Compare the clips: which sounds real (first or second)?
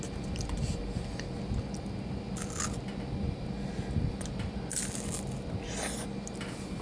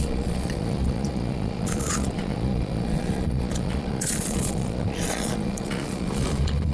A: first